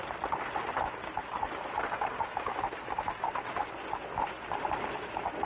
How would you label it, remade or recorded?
recorded